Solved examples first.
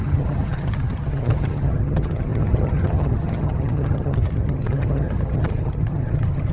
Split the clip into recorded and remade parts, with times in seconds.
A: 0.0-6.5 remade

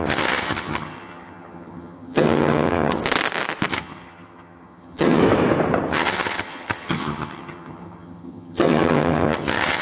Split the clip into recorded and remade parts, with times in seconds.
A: 0.0-3.0 remade; 3.0-3.7 recorded; 3.7-5.2 remade; 5.2-5.9 recorded; 5.9-9.8 remade

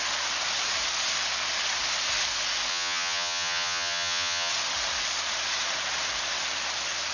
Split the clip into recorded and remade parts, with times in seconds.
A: 0.0-2.7 recorded; 2.7-4.5 remade; 4.5-7.1 recorded

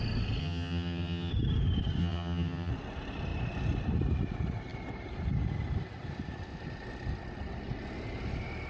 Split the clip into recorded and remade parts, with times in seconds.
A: 0.0-0.4 recorded; 0.4-1.3 remade; 1.3-2.0 recorded; 2.0-2.7 remade; 2.7-8.7 recorded

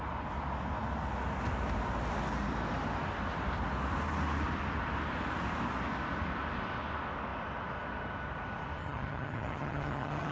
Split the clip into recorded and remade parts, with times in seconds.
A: 0.0-8.8 recorded; 8.8-10.3 remade

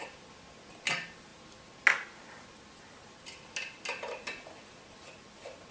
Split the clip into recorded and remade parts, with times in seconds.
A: 0.0-5.7 recorded

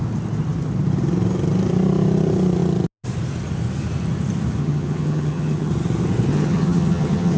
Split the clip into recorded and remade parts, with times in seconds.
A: 0.0-4.6 recorded; 4.6-5.7 remade; 5.7-6.3 recorded; 6.3-7.4 remade

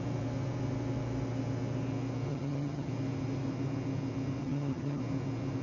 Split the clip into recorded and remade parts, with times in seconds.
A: 0.0-2.3 recorded; 2.3-2.9 remade; 2.9-4.4 recorded; 4.4-5.0 remade; 5.0-5.6 recorded